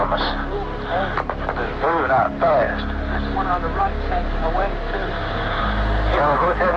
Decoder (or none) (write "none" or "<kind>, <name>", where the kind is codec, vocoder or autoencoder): none